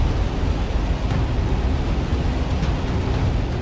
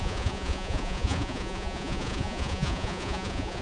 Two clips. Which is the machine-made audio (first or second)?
second